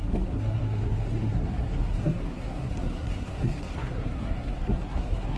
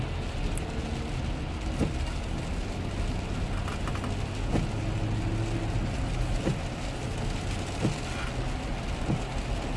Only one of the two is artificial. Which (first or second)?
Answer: first